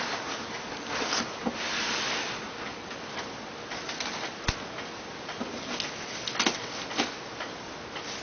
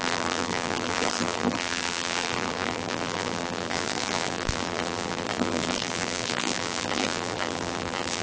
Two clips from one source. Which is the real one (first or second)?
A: first